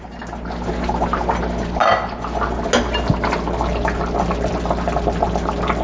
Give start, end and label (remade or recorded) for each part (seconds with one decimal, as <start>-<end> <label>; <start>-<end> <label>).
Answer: 0.0-5.8 recorded